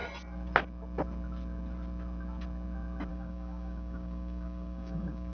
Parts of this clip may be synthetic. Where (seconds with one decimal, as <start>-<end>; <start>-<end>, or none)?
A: 3.1-5.3